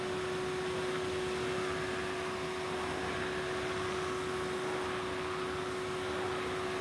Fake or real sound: real